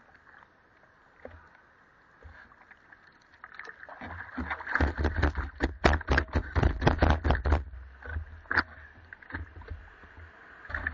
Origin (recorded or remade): recorded